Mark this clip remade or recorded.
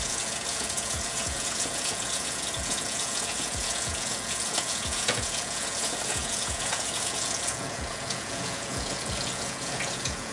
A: remade